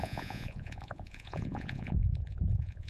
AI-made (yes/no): yes